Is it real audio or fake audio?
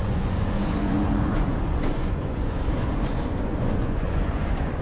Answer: fake